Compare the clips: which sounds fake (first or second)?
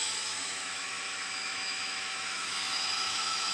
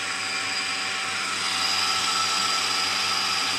first